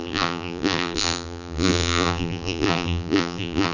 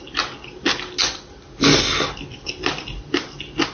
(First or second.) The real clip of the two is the second